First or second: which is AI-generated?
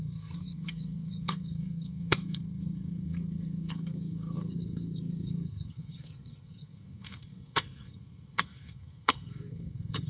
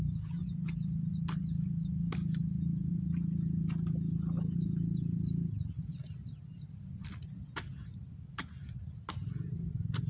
first